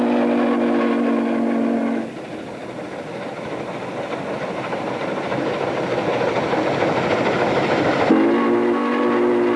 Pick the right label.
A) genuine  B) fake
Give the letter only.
A